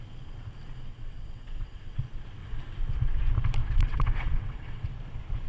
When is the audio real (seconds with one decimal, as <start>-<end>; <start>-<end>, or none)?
0.0-0.9; 2.0-2.4; 2.9-3.6; 4.9-5.5

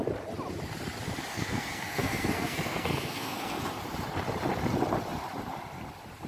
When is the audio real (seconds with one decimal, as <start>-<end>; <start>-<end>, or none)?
0.0-1.3; 3.6-6.3

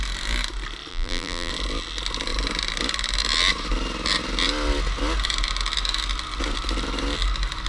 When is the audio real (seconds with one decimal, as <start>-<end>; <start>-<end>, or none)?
0.0-0.9; 1.5-7.7

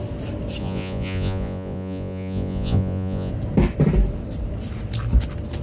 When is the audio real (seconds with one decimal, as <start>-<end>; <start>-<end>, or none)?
0.0-0.6; 3.3-5.6

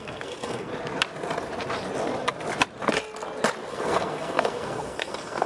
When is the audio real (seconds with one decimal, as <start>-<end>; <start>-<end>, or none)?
0.7-3.7